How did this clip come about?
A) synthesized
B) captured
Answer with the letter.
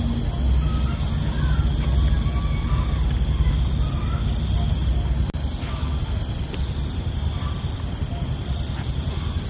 B